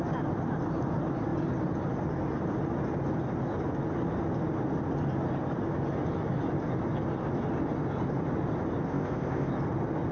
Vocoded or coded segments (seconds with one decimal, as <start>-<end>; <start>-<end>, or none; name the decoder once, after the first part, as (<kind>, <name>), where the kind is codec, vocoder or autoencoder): 8.9-9.5 (codec, ZipCodec)